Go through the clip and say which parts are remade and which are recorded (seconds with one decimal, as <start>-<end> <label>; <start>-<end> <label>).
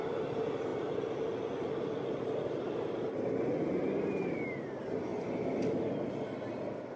0.0-5.1 recorded; 5.1-6.1 remade; 6.1-7.0 recorded